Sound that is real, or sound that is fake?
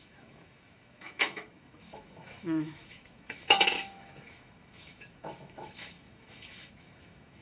fake